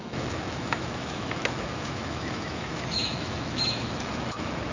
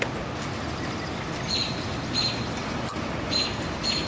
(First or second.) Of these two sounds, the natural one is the second